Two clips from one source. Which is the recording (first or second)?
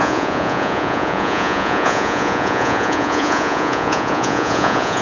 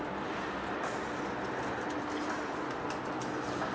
second